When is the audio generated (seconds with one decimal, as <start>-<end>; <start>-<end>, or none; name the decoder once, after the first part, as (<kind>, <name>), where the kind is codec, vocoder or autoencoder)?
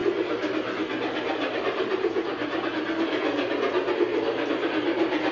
0.0-2.8 (vocoder, BigVGAN v2); 4.1-5.3